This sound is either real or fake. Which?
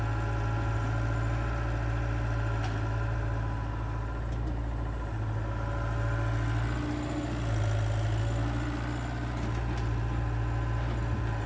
real